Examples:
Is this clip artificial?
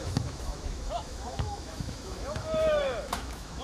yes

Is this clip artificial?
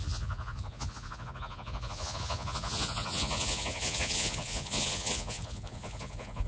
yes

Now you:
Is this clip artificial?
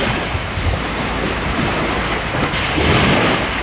no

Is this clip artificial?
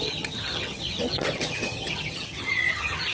yes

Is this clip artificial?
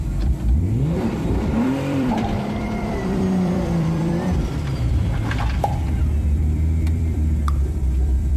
yes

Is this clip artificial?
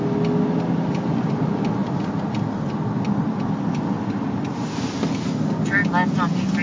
no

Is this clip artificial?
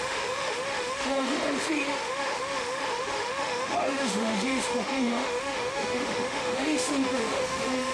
yes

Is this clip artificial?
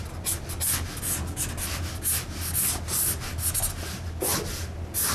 no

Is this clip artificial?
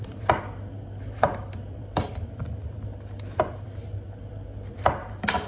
yes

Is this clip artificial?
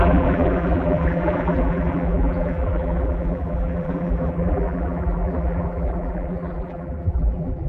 yes